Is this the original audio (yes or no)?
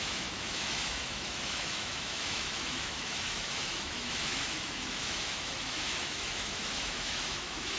no